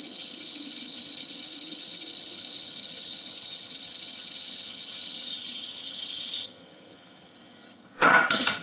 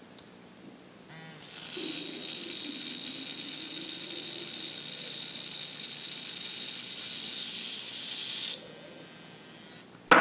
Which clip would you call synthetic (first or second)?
first